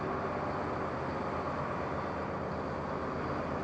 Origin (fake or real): real